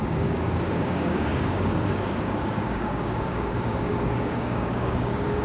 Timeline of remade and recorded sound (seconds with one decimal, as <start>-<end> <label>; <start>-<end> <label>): 0.0-5.4 remade